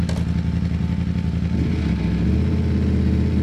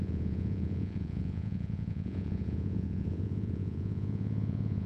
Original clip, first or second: first